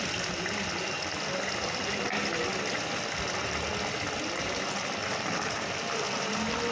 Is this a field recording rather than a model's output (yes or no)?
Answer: yes